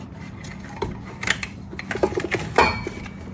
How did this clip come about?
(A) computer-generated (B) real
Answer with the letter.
B